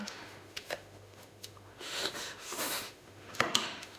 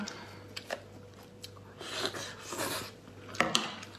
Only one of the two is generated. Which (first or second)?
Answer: first